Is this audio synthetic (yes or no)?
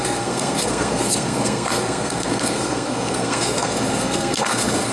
yes